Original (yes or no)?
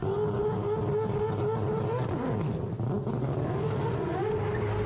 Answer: yes